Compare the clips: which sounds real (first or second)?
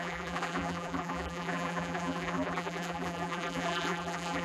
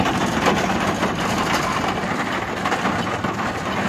second